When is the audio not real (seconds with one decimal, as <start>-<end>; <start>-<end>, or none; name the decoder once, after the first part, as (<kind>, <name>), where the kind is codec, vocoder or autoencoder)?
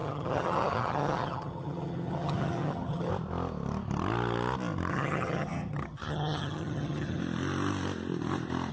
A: 0.0-3.1 (vocoder, HiFi-GAN); 4.9-7.2